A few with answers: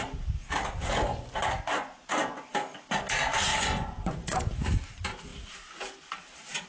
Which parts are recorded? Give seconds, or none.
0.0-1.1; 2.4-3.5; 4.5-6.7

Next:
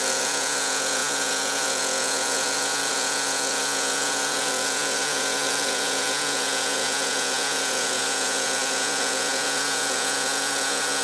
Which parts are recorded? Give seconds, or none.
none

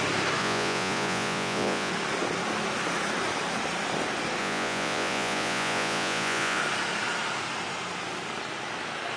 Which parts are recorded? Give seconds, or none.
0.0-0.4; 1.9-4.4; 6.6-9.2

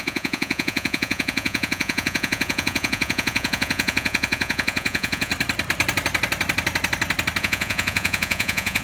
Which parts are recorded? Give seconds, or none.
5.3-7.4

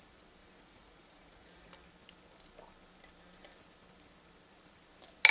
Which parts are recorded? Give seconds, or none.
0.0-0.4; 1.7-5.3

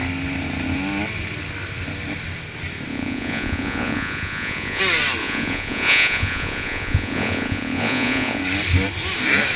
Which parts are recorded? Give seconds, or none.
0.0-2.9; 4.8-5.2; 8.4-9.6